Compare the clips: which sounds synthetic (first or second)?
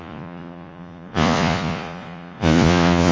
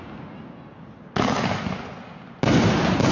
first